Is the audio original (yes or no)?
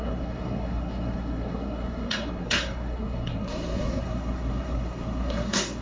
no